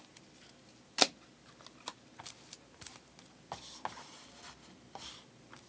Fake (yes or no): no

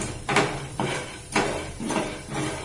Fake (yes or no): yes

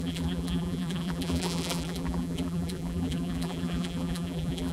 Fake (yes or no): yes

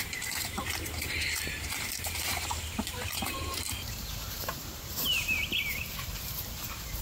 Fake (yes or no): yes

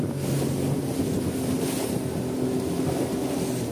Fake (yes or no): no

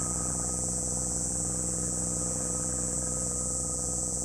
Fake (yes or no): yes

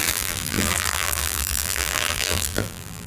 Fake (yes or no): yes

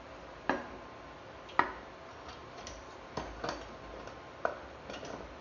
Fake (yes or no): no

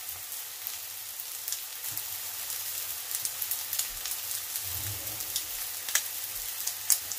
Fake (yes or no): no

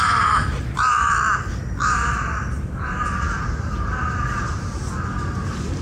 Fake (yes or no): no